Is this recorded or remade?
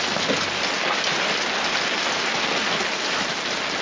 recorded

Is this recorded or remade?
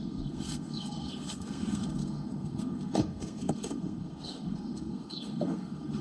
remade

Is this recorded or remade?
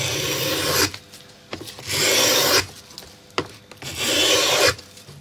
recorded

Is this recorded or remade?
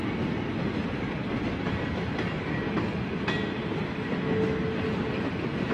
recorded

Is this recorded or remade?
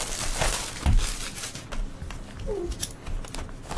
recorded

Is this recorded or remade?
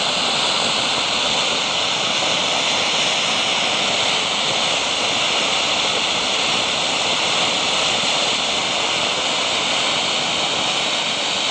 recorded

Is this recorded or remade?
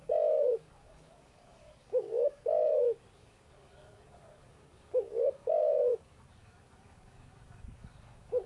remade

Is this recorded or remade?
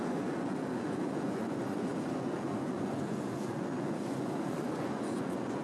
remade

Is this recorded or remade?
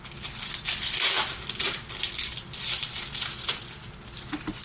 recorded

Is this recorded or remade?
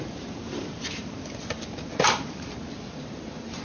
remade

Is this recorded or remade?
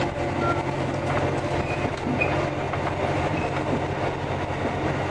recorded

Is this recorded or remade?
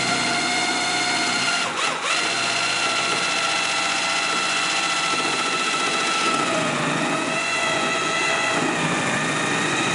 remade